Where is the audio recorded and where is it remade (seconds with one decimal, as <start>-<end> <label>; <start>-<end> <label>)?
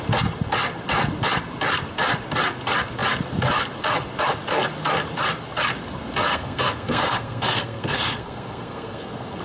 0.0-6.3 recorded; 6.3-9.4 remade